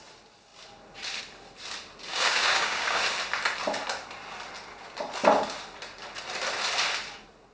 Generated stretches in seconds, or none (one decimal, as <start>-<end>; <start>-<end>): 2.1-3.0